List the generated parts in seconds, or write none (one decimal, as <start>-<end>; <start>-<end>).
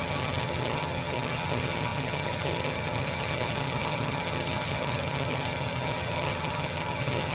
0.0-7.3